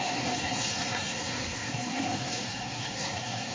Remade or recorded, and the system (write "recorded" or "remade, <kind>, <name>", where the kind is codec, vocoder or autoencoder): remade, codec, SNAC